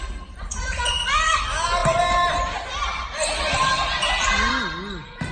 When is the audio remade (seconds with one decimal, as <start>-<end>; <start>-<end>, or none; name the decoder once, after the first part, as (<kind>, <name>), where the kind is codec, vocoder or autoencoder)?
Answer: 4.0-4.5 (vocoder, BigVGAN v2)